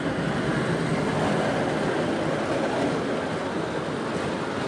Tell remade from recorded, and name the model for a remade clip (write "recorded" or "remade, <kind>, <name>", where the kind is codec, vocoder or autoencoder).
recorded